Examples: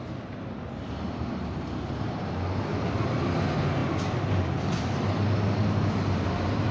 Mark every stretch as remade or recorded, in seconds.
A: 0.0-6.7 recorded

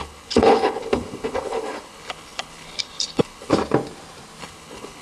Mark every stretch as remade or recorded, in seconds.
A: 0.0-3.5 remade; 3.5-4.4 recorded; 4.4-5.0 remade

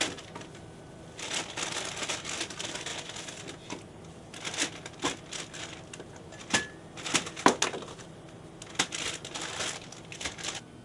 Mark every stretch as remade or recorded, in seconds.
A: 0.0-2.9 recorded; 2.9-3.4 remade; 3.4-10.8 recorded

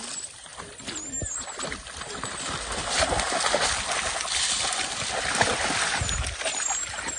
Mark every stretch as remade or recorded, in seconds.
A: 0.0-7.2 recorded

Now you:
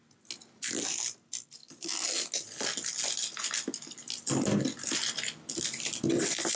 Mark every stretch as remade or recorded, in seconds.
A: 0.0-6.6 recorded

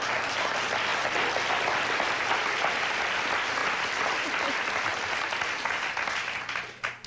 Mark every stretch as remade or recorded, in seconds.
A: 0.0-7.1 recorded